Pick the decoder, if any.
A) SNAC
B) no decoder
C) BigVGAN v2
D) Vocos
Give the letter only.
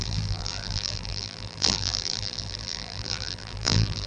C